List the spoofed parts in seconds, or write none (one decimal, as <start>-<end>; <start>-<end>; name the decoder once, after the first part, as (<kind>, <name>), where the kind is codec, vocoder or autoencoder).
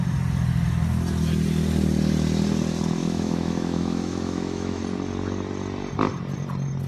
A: 3.0-4.8 (autoencoder, DAC-VAE)